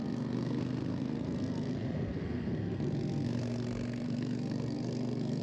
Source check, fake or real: fake